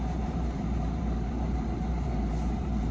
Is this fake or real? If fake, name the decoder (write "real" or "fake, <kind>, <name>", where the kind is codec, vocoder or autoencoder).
fake, vocoder, BigVGAN v2